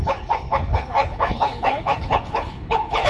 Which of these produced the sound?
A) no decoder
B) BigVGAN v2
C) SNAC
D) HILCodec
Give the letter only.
D